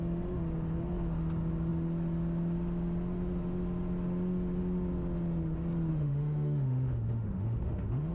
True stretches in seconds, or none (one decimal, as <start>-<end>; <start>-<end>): 0.0-5.9